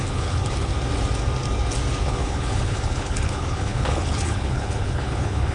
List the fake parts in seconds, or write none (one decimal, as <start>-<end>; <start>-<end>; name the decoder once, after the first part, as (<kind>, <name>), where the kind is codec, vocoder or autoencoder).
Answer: 0.0-0.7 (codec, HILCodec); 2.0-5.5